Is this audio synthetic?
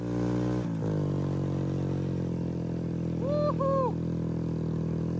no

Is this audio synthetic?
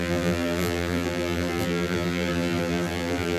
yes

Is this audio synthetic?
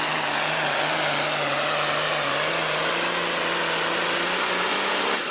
no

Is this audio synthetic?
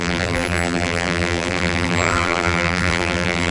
yes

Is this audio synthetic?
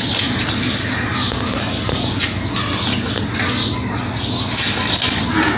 no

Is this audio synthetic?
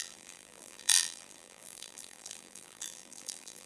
yes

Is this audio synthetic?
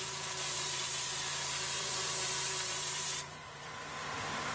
yes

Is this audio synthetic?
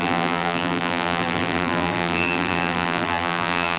yes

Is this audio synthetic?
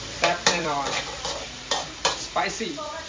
yes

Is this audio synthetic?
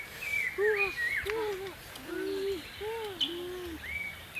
no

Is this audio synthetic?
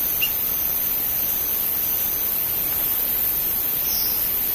no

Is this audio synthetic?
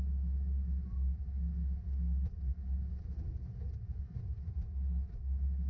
no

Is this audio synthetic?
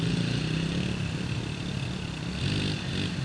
no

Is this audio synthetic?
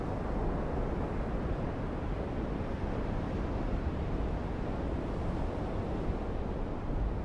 no